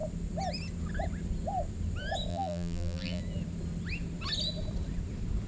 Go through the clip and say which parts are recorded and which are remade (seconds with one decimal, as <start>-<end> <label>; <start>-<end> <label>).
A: 0.0-2.3 recorded; 2.3-3.2 remade; 3.2-5.5 recorded